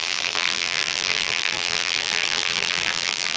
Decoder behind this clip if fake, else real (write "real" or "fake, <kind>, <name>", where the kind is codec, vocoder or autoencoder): fake, vocoder, BigVGAN v2